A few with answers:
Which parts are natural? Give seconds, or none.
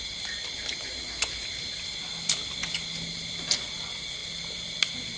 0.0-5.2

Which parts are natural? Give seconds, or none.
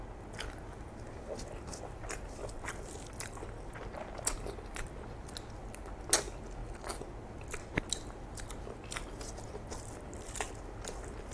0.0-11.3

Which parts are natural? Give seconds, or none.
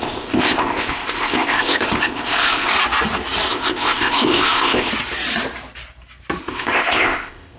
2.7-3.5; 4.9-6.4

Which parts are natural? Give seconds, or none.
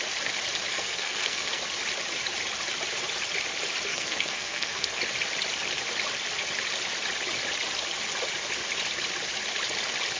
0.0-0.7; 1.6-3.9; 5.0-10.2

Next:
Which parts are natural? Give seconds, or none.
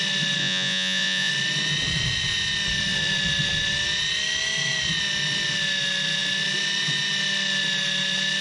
0.0-0.4; 1.3-8.4